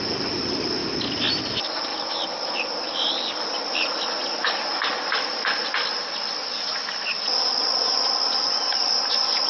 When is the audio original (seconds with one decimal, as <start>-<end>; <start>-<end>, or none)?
0.8-1.4; 1.9-3.1; 4.2-5.6